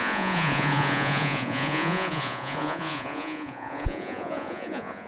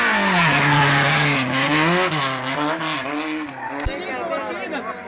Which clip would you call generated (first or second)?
first